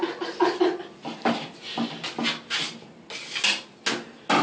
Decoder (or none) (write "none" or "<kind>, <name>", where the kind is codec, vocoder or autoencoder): none